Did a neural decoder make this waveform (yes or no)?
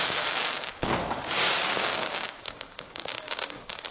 yes